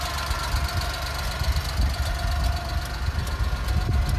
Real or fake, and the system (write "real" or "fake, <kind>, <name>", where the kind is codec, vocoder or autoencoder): real